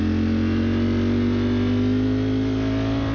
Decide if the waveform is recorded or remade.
recorded